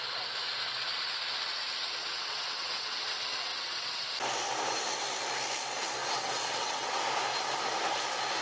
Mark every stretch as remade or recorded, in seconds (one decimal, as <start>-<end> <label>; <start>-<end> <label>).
0.0-2.0 recorded; 2.0-3.0 remade; 3.0-3.5 recorded; 3.5-4.1 remade; 4.1-6.0 recorded; 6.0-7.0 remade; 7.0-8.4 recorded